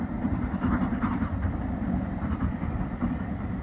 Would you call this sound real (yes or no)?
yes